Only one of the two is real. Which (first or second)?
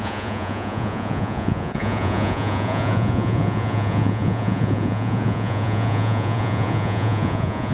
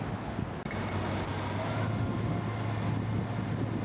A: second